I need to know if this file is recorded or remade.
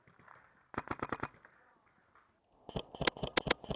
recorded